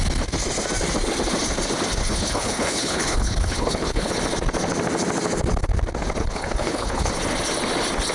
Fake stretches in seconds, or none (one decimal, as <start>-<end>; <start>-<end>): 2.0-4.1; 6.2-7.1